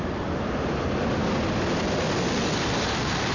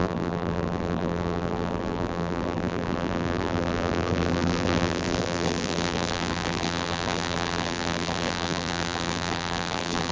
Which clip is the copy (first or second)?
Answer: second